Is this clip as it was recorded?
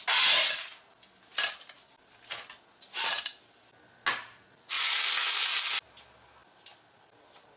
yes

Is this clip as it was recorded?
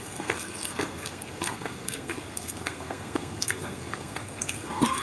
no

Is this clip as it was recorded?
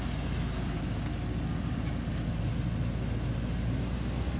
yes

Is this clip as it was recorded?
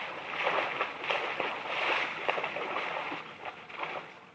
yes